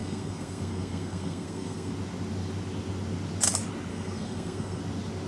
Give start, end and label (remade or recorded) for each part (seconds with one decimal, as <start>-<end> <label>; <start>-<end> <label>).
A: 0.0-1.9 remade; 1.9-3.9 recorded; 3.9-4.8 remade; 4.8-5.3 recorded